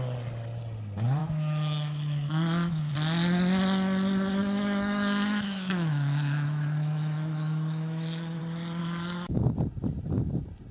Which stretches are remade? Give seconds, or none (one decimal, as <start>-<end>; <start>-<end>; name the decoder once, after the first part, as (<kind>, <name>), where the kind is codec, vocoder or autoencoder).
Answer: 1.2-2.9 (autoencoder, DAC-VAE); 4.4-8.4; 8.8-9.4